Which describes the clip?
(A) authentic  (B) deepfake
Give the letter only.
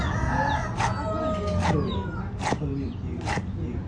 A